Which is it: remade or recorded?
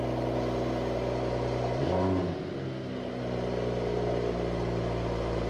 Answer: recorded